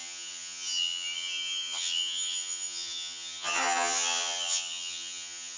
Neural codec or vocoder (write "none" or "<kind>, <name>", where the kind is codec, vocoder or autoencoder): vocoder, HiFi-GAN